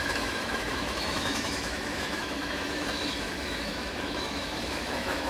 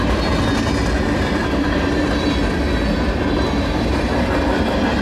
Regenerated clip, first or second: first